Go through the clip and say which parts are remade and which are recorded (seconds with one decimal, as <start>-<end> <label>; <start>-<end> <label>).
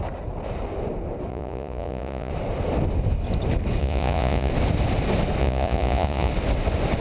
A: 0.0-1.3 recorded; 1.3-2.3 remade; 2.3-3.8 recorded; 3.8-4.5 remade; 4.5-5.4 recorded; 5.4-6.3 remade; 6.3-7.0 recorded